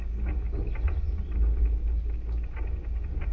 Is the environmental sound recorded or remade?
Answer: recorded